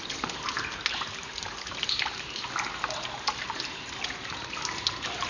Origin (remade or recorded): recorded